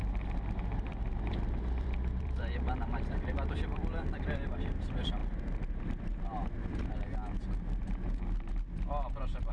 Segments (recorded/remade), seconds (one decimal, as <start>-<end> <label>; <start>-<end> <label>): 0.0-5.2 remade; 5.2-9.5 recorded